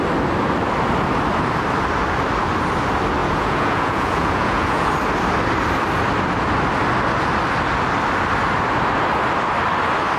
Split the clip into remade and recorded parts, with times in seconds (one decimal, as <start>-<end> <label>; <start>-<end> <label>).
0.0-3.2 recorded; 3.2-4.9 remade; 4.9-10.2 recorded